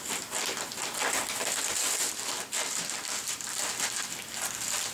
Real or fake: real